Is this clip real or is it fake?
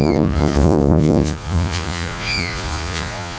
fake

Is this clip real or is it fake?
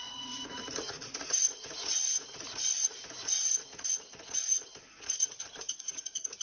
fake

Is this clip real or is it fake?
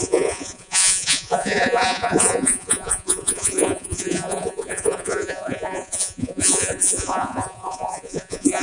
fake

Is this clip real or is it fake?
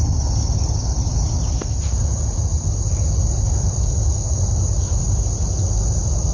real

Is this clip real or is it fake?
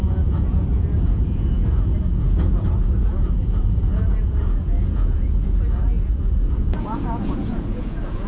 fake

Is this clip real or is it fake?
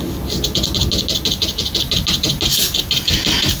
real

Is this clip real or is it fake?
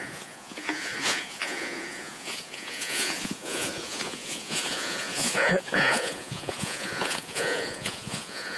fake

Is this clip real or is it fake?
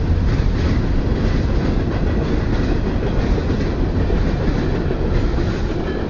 real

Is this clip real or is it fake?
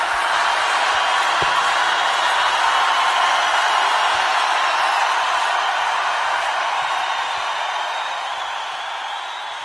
real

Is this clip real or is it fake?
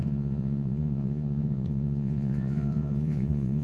fake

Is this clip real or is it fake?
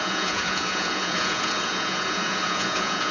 fake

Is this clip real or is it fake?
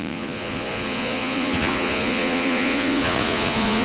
fake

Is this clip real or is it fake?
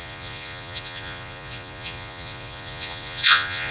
fake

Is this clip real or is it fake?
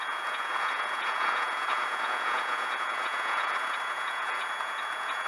fake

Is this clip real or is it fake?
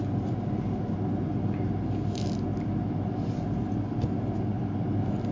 real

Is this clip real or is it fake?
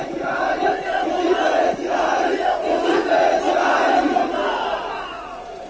fake